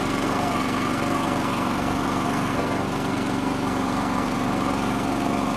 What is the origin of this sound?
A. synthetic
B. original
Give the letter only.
A